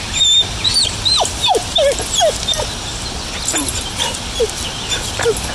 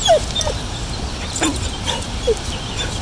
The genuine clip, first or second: first